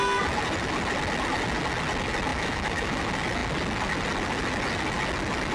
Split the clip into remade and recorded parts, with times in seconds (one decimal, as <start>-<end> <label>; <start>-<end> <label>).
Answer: 0.0-2.3 recorded; 2.3-3.0 remade; 3.0-5.5 recorded